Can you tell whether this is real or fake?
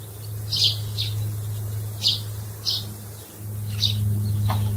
real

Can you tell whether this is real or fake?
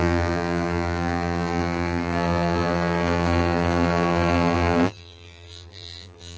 fake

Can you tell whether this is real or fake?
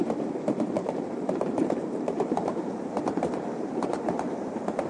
fake